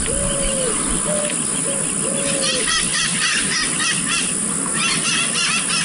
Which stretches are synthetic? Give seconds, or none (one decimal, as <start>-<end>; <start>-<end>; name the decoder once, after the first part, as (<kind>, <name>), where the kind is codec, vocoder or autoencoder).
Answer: none